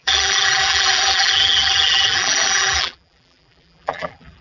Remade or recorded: remade